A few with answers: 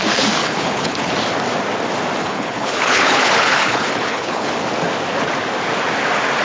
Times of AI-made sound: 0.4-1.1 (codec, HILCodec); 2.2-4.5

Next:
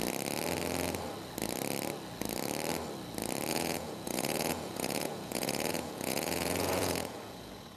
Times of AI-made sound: 3.5-7.8 (vocoder, Vocos)

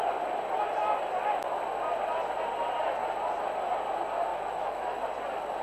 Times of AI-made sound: 4.3-5.0 (autoencoder, DAC-VAE)

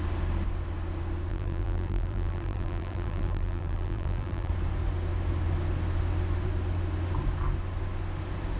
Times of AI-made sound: 1.3-4.5 (vocoder, BigVGAN v2)

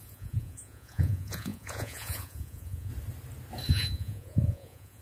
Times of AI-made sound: 0.0-2.9 (vocoder, Vocos); 3.7-5.0

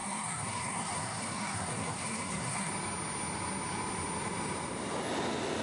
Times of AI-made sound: 0.0-2.7 (codec, SNAC)

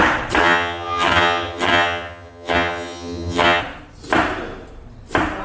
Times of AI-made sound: 0.4-3.6 (vocoder, HiFi-GAN)

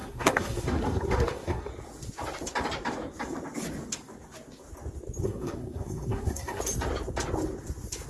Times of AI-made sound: 0.0-1.7 (codec, SNAC); 5.2-6.6